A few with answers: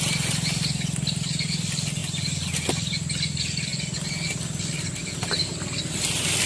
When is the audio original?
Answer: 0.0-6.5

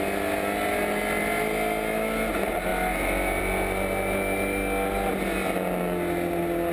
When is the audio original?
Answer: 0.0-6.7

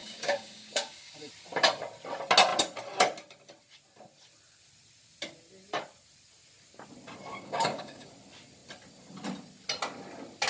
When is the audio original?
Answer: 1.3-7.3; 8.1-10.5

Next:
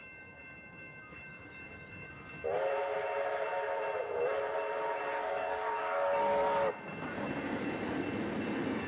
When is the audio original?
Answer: 2.1-5.2; 6.7-8.9

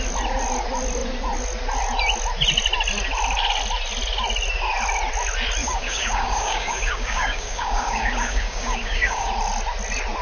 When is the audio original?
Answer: 0.0-5.6; 9.3-10.2

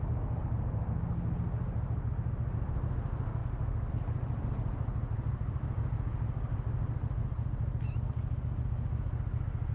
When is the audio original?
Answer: 0.0-9.7

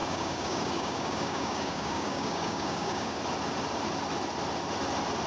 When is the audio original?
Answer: 3.2-5.3

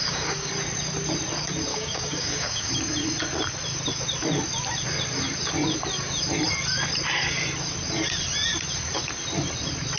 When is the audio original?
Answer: 0.5-1.7; 2.7-10.0